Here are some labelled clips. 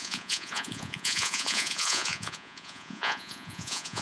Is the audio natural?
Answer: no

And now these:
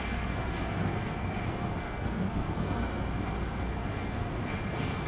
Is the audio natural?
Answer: no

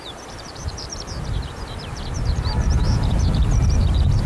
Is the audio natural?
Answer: no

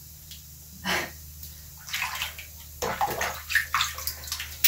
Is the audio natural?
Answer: yes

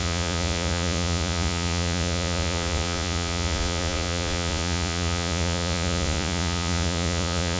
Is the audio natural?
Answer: no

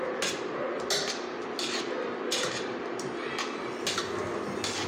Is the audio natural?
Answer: yes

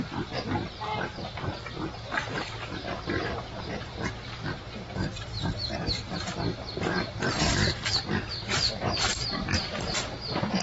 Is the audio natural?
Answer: no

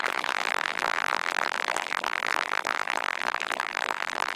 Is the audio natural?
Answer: no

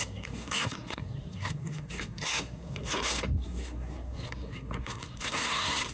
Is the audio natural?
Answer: no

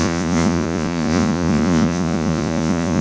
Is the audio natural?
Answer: no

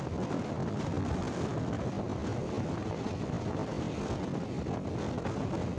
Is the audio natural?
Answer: yes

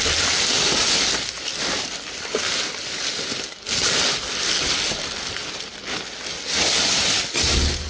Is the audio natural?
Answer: yes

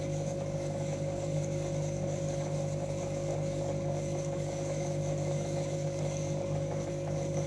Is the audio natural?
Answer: no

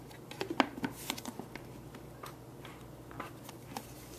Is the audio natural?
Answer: yes